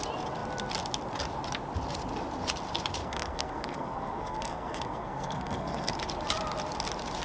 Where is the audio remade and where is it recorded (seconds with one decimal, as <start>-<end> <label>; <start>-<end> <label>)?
0.0-3.0 recorded; 3.0-5.9 remade; 5.9-7.2 recorded